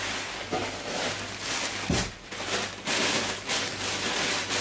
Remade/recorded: recorded